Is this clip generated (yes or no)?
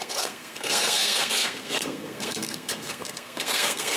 yes